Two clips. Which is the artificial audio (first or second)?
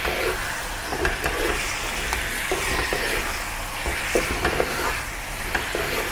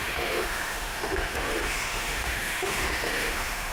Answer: second